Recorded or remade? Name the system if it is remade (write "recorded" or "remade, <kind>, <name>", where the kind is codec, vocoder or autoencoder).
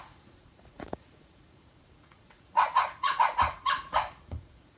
remade, vocoder, Vocos